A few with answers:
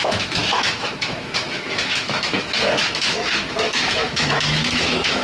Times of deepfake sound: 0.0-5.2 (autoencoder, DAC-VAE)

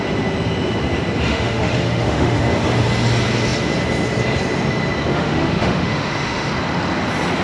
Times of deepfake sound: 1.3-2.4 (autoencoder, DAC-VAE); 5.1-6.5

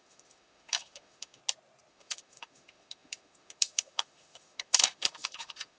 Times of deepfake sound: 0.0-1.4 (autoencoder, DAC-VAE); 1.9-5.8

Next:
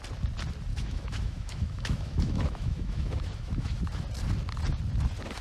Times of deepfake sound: 0.7-3.8 (autoencoder, DAC-VAE)

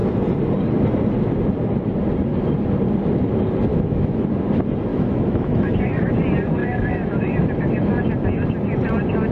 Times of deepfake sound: 3.7-4.3 (autoencoder, DAC-VAE); 4.9-6.1; 6.6-7.3